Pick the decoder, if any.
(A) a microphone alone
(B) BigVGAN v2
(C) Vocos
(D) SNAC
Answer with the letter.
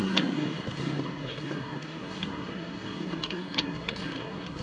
D